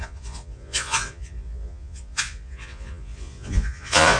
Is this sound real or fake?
fake